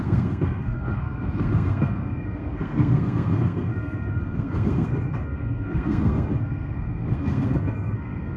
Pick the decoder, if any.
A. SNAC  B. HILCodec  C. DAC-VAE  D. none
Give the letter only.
A